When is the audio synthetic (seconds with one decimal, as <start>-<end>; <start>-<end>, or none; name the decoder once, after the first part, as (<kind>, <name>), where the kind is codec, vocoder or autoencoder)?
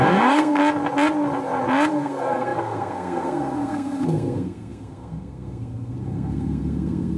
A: 0.0-0.6 (codec, SNAC); 1.9-7.2